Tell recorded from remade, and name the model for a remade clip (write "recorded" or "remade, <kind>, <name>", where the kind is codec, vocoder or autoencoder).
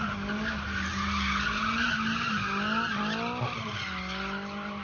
recorded